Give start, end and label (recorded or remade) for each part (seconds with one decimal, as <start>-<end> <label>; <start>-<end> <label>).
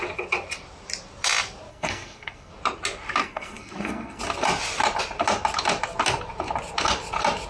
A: 0.0-1.7 recorded; 1.7-2.5 remade; 2.5-3.2 recorded; 3.2-4.2 remade; 4.2-7.5 recorded